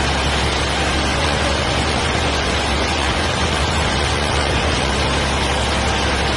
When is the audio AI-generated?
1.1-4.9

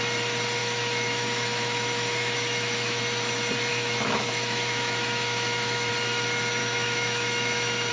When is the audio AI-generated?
0.6-3.0; 3.7-5.9; 6.6-7.9

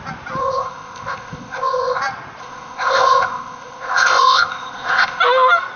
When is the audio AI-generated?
0.4-2.0; 2.4-5.2

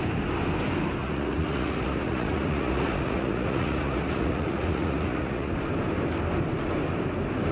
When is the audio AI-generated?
1.0-5.5

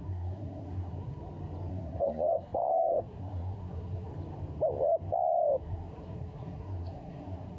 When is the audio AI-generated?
0.0-1.2; 1.7-4.1; 5.6-7.6